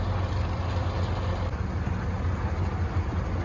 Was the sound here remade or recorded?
recorded